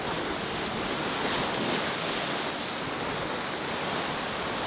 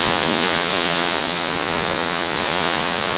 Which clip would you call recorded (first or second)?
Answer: first